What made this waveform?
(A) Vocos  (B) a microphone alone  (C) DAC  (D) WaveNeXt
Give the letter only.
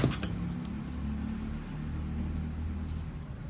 B